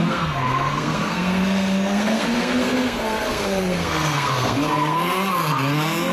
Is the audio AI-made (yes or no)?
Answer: yes